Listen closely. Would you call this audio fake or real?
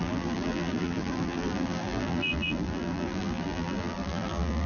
fake